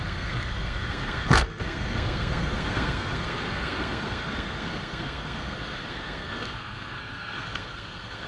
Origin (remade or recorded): remade